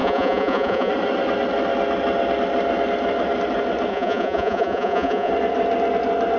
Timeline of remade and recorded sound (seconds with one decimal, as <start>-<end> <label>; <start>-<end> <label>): 0.0-0.9 remade; 0.9-3.9 recorded; 3.9-5.3 remade; 5.3-6.4 recorded